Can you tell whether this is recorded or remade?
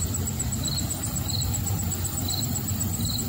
recorded